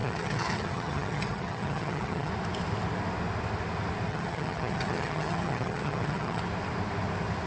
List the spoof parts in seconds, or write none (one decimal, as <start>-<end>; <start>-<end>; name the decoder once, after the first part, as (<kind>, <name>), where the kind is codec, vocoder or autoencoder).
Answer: 0.0-2.3 (vocoder, HiFi-GAN); 4.1-6.4